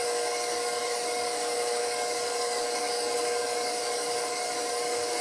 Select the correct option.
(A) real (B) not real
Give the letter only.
B